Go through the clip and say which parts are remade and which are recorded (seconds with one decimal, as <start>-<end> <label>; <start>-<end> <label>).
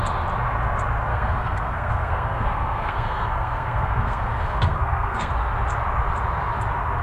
0.0-1.1 recorded; 1.1-5.3 remade; 5.3-7.0 recorded